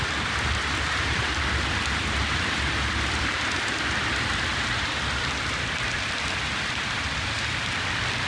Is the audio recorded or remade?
remade